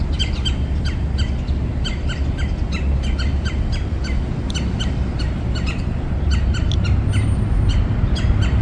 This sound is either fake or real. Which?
real